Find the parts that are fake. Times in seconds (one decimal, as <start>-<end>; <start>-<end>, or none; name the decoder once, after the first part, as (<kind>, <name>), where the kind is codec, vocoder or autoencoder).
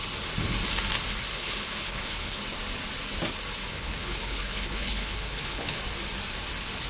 1.3-2.4 (codec, HILCodec); 3.7-5.8